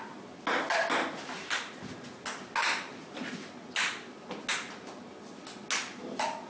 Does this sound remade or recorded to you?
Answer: recorded